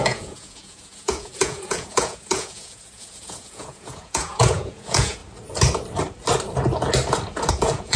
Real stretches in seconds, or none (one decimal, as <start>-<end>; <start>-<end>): 5.2-7.5

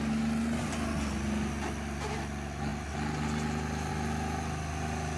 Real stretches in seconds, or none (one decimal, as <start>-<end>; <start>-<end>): 0.0-5.2

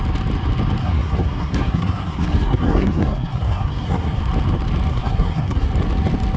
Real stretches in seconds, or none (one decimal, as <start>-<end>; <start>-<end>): 0.0-0.8; 4.2-4.9; 5.7-6.4

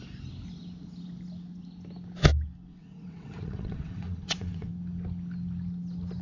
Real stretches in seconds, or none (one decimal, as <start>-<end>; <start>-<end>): 0.0-2.7; 4.7-6.2

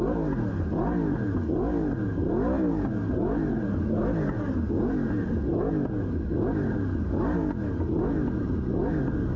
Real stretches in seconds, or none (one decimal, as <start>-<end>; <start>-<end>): 0.0-9.4

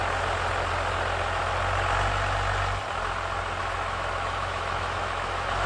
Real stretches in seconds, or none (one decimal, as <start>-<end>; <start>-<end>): 0.0-3.6

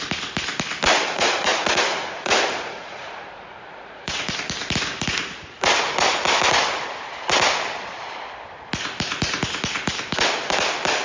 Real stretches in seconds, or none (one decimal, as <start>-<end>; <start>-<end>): 0.0-0.9; 4.3-11.0